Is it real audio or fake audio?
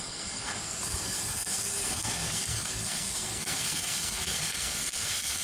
fake